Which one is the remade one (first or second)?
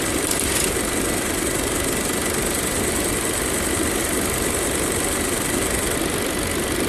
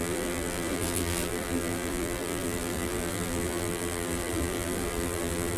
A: second